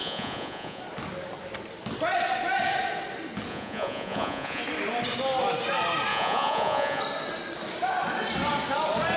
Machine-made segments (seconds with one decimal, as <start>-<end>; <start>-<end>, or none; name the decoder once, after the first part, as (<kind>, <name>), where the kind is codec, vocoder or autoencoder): 0.0-0.8 (vocoder, Vocos); 3.5-4.6; 6.1-7.0